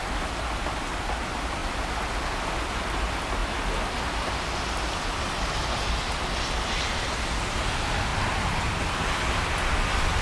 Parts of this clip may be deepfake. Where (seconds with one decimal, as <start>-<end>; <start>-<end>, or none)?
none